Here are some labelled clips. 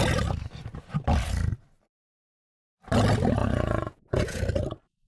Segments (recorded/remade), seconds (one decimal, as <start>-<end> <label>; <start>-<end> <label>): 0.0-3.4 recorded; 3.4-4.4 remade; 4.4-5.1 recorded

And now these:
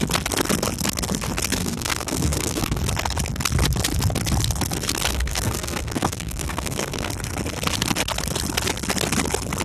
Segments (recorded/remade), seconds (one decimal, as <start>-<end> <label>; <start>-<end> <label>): 0.0-1.6 recorded; 1.6-2.8 remade; 2.8-5.1 recorded; 5.1-7.1 remade; 7.1-9.6 recorded

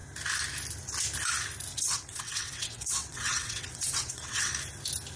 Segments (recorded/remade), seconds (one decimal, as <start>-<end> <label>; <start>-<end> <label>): 0.0-1.7 recorded; 1.7-4.5 remade; 4.5-5.2 recorded